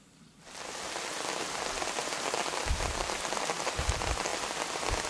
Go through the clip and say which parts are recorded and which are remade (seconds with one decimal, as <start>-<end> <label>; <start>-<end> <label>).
0.0-5.1 recorded